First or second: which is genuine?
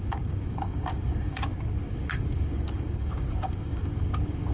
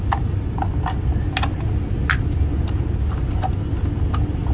second